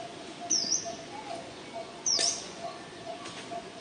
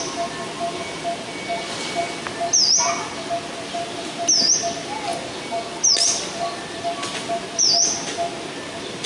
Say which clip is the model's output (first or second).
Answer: first